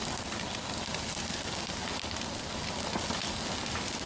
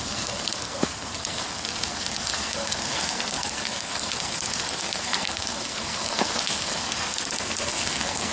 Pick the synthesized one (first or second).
second